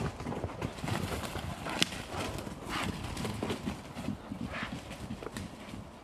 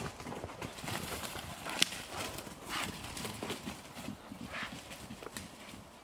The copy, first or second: second